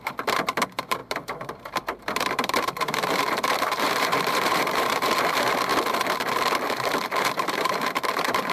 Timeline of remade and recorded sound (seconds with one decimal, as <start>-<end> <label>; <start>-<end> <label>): 0.0-5.7 remade; 5.7-7.2 recorded; 7.2-8.5 remade